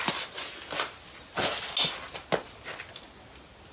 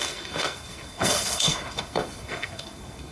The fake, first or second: second